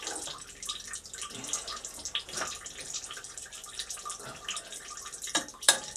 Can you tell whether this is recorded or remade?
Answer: remade